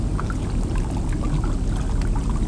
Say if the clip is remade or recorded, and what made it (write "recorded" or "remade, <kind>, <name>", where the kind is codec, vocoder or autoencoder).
recorded